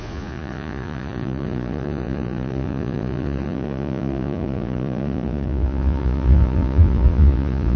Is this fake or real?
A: fake